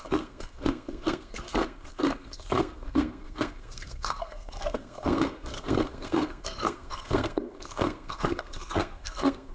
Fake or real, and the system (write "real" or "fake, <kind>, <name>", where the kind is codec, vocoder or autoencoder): fake, codec, SNAC